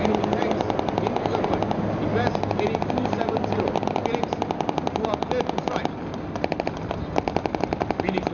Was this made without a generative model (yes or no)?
yes